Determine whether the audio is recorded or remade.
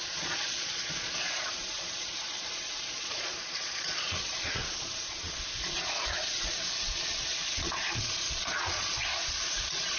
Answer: remade